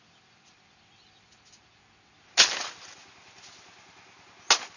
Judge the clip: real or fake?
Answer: real